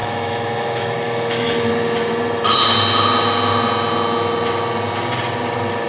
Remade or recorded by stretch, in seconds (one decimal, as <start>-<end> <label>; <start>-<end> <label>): 0.0-1.7 remade; 1.7-5.9 recorded